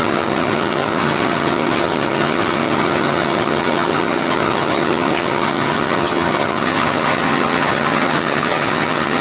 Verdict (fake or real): fake